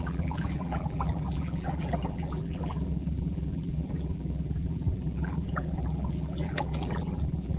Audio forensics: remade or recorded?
remade